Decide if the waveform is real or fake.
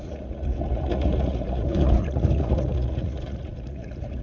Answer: fake